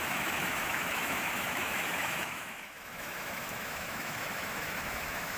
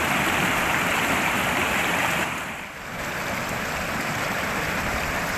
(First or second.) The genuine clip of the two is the second